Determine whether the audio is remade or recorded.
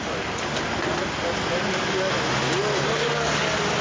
recorded